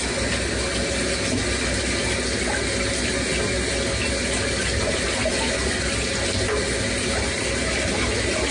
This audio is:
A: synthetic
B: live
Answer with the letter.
B